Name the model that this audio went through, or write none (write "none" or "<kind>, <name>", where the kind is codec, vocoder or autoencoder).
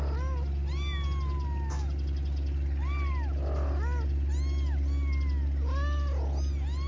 none